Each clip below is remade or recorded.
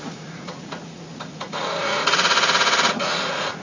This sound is remade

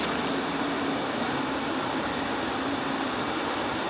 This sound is recorded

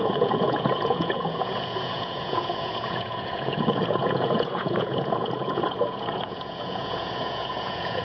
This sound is remade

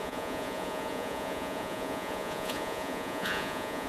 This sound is remade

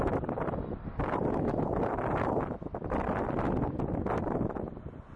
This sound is recorded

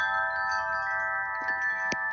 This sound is recorded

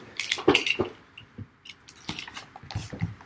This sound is recorded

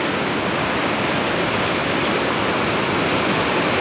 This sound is recorded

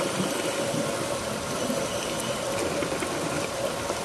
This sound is recorded